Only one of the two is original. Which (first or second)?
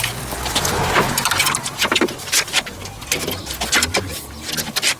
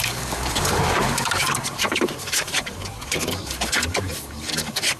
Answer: first